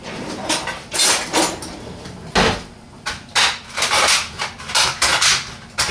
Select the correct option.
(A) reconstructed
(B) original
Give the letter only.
B